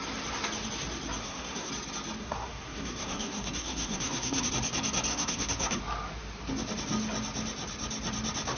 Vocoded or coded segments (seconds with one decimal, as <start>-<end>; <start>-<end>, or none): 1.2-1.7; 2.2-4.5; 5.1-5.8